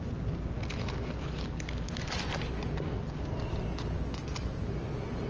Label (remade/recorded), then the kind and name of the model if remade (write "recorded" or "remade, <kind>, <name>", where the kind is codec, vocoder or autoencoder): recorded